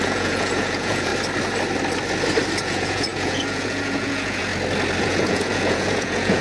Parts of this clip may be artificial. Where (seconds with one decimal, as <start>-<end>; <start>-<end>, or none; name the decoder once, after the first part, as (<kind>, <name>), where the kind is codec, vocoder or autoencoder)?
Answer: 0.0-1.1 (vocoder, Vocos); 2.6-4.5; 5.0-6.4